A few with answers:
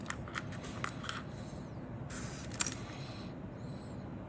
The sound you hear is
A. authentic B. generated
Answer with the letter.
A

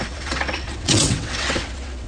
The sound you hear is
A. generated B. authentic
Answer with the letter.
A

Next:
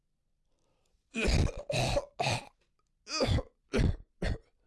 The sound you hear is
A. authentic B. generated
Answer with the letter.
A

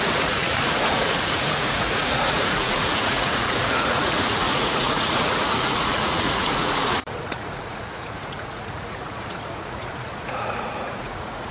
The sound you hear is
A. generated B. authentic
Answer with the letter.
A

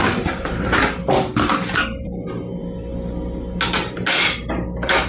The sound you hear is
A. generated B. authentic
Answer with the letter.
B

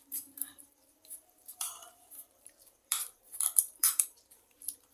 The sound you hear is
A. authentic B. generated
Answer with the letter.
B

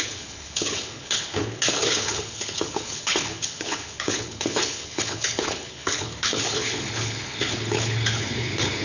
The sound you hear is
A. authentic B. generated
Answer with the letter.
B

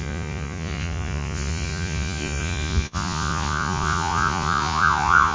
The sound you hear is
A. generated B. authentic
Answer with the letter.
A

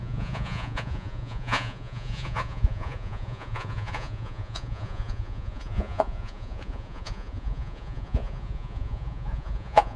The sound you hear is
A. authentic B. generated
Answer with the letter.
B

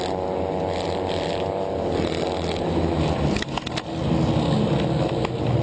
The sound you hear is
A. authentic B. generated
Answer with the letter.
A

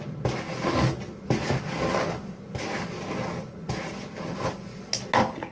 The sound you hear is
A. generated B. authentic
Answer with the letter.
B